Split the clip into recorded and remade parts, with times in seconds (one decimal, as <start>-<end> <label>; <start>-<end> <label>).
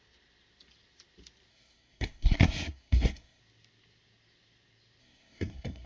0.0-1.5 recorded; 1.5-3.4 remade; 3.4-5.0 recorded; 5.0-5.9 remade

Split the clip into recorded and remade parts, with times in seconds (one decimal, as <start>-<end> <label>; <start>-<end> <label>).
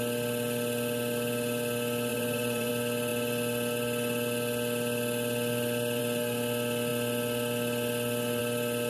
0.0-2.1 recorded; 2.1-2.7 remade; 2.7-8.9 recorded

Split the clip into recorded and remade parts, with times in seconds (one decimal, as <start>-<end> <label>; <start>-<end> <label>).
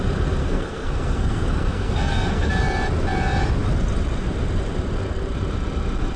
0.0-0.4 recorded; 0.4-2.5 remade; 2.5-6.2 recorded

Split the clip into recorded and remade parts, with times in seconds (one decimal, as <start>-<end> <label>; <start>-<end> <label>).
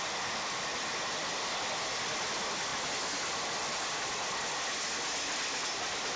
0.0-6.2 recorded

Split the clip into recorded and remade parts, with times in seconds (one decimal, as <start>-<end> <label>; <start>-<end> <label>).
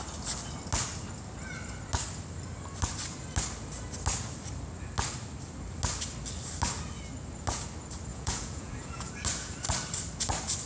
0.0-8.1 recorded; 8.1-9.1 remade; 9.1-10.7 recorded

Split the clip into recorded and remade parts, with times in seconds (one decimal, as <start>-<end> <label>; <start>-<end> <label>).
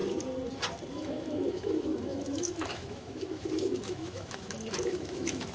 0.0-0.9 recorded; 0.9-5.5 remade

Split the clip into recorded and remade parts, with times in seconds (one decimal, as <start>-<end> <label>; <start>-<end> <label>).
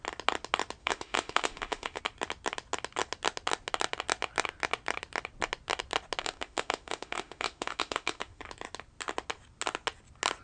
0.0-0.8 recorded; 0.8-2.0 remade; 2.0-6.2 recorded; 6.2-8.4 remade; 8.4-10.4 recorded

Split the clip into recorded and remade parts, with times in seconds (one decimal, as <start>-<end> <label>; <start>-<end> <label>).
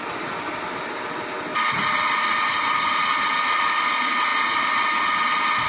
0.0-5.7 recorded